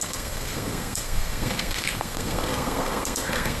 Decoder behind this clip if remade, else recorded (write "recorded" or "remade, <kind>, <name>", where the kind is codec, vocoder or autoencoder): remade, codec, SNAC